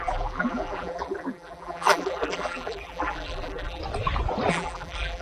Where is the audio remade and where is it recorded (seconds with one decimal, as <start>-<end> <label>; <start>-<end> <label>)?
0.0-3.8 remade; 3.8-4.5 recorded; 4.5-5.2 remade